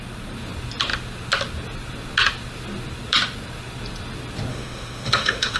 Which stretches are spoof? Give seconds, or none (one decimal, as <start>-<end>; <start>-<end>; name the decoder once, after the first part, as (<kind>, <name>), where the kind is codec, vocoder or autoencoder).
4.5-5.6 (autoencoder, DAC-VAE)